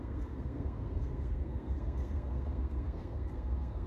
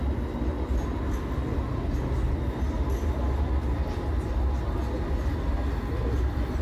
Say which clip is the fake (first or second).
first